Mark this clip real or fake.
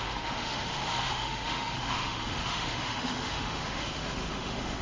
fake